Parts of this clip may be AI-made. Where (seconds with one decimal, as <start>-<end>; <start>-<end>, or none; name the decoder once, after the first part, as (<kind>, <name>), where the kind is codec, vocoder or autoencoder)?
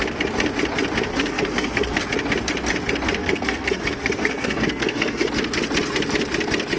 1.1-2.0 (codec, SNAC); 3.2-5.3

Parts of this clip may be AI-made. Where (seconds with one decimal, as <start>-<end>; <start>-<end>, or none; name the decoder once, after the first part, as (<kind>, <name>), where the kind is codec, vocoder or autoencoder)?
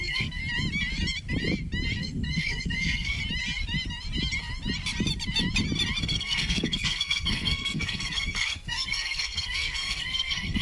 0.0-0.4 (codec, SNAC); 2.0-3.2; 6.0-10.6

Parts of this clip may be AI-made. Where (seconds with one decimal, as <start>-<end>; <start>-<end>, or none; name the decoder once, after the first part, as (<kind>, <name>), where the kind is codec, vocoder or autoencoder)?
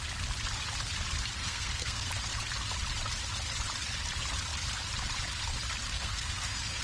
1.4-2.1 (codec, SNAC); 5.9-6.8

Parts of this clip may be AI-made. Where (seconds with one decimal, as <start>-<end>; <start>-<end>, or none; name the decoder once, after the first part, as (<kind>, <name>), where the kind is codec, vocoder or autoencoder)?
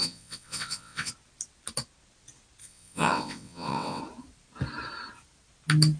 0.0-1.1 (vocoder, WaveNeXt); 2.6-4.0